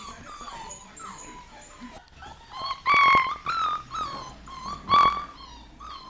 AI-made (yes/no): no